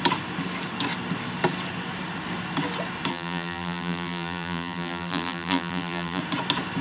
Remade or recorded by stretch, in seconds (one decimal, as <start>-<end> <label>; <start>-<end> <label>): 0.0-3.1 recorded; 3.1-6.2 remade; 6.2-6.8 recorded